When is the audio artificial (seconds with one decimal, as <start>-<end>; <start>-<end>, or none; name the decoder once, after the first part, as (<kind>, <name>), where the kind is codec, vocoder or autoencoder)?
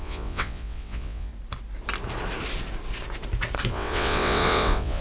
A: 0.0-1.3 (vocoder, WaveNeXt); 3.7-5.0